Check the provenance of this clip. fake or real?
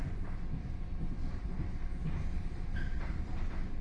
real